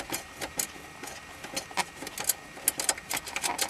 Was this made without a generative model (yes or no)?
yes